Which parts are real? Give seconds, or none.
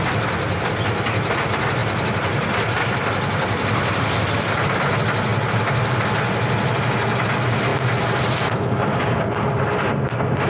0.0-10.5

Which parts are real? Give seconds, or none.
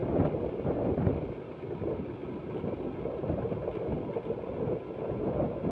0.6-5.7